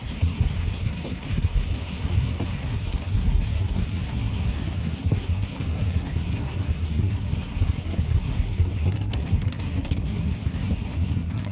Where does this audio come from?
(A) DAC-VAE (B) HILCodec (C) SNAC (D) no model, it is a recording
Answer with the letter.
C